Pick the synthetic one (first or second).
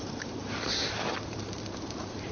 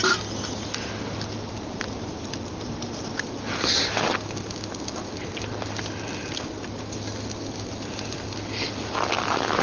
first